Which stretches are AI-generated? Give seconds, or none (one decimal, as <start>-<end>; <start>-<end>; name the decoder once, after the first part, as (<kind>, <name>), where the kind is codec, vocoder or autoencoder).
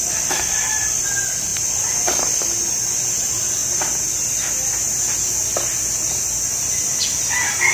none